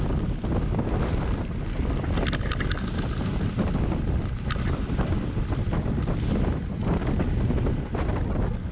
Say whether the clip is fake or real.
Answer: real